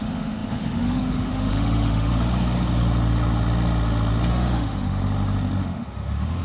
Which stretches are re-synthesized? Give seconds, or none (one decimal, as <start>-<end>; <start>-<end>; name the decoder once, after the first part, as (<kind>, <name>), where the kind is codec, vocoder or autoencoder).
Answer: 0.0-2.1 (autoencoder, DAC-VAE); 4.3-5.0; 5.6-6.4